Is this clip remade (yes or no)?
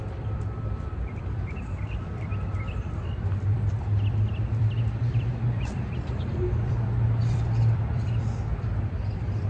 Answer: yes